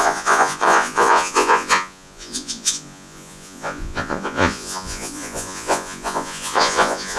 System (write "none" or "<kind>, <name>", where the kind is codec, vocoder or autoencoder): vocoder, Vocos